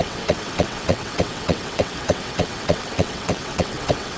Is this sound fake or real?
fake